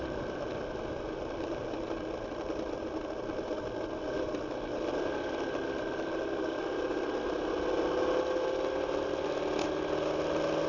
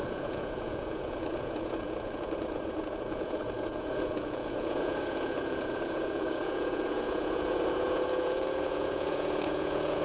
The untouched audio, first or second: first